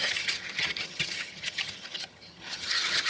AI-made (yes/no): yes